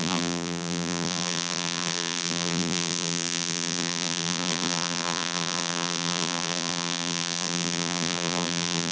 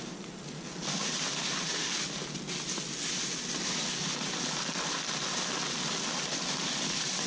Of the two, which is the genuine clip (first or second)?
second